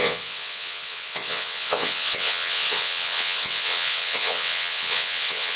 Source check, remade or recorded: remade